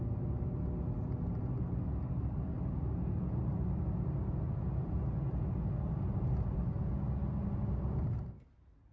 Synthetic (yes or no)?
no